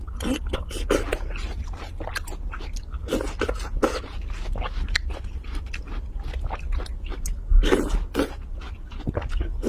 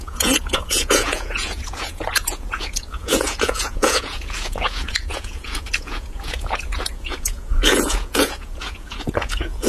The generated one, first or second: second